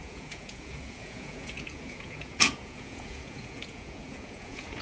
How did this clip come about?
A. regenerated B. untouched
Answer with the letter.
A